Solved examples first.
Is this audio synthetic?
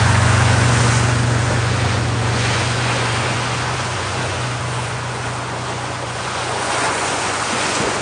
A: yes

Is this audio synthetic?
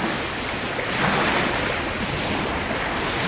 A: no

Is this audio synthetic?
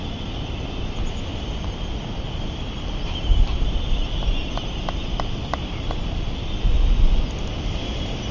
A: no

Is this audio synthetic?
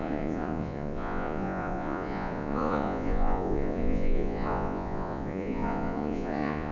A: yes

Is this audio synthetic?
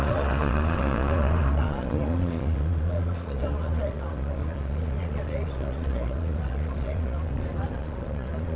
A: yes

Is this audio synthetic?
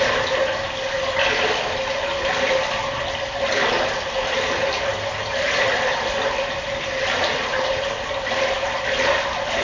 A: no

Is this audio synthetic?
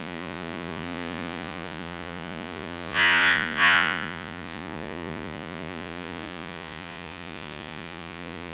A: yes